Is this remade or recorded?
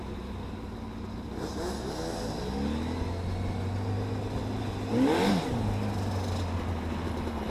recorded